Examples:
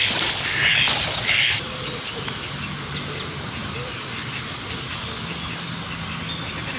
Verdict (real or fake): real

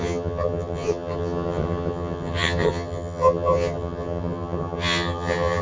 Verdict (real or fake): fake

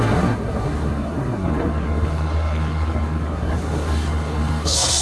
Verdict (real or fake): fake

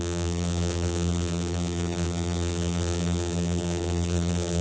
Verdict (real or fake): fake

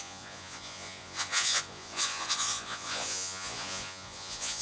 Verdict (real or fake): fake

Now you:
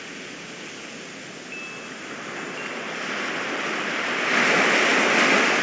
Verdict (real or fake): real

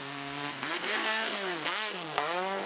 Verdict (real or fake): fake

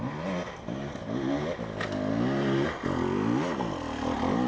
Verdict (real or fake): real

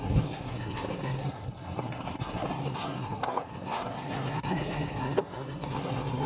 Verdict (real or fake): fake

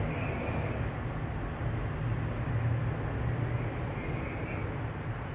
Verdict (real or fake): real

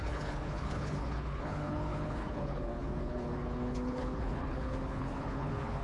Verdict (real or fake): fake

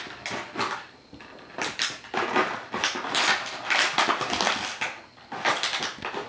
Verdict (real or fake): real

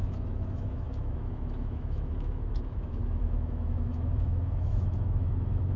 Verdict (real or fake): fake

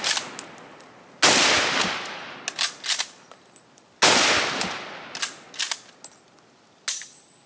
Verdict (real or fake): real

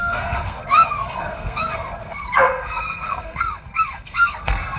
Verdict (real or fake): fake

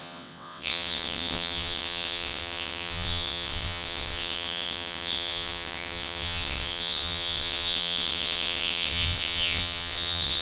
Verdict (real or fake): fake